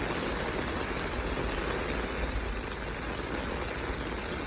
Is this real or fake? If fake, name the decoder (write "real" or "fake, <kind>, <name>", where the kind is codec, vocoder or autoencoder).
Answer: real